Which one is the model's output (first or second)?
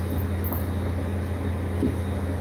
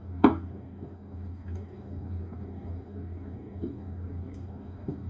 second